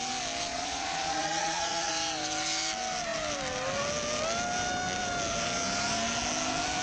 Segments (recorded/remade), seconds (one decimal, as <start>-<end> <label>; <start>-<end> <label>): 0.0-0.5 recorded; 0.5-1.9 remade; 1.9-6.8 recorded